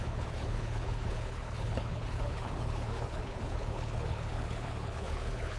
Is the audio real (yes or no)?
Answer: no